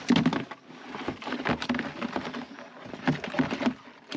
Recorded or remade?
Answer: recorded